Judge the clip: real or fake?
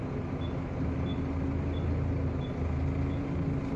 real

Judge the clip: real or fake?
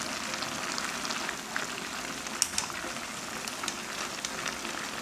real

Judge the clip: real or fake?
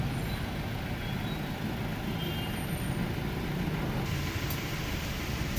real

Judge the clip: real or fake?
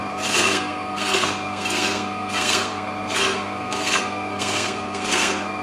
fake